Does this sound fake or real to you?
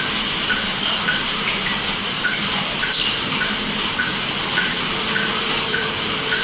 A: fake